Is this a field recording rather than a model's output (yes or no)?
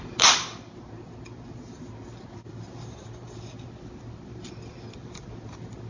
yes